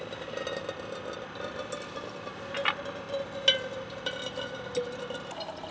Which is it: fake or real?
real